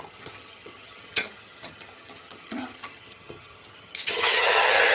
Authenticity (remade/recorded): remade